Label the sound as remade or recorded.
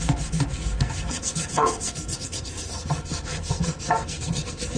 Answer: remade